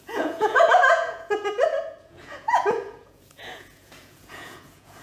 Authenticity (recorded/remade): remade